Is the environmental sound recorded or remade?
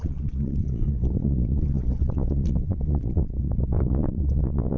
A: remade